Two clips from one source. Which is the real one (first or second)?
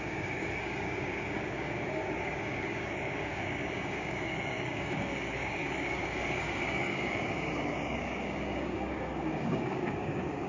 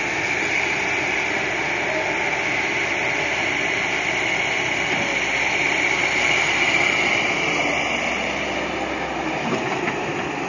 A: second